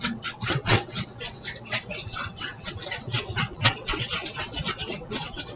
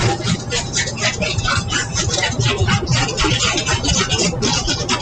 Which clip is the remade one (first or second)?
first